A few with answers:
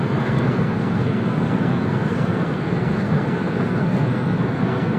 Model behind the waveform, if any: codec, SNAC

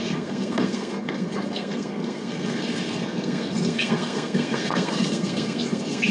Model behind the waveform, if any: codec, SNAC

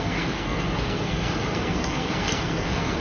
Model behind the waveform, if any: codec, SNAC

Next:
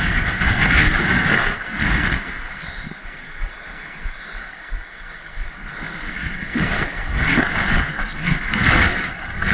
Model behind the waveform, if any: codec, SNAC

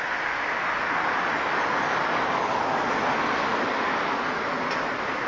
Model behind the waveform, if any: none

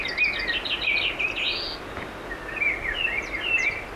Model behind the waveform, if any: none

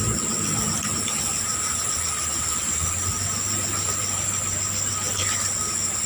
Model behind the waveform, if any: none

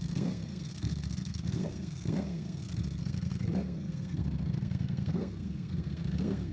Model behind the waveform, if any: codec, SNAC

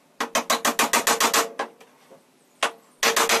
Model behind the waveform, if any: none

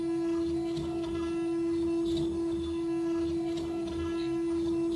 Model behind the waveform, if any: none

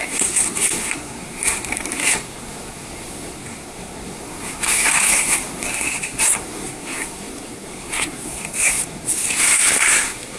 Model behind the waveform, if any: codec, SNAC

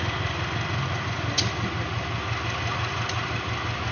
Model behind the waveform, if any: none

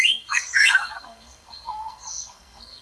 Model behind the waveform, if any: codec, SNAC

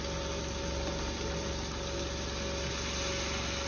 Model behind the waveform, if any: none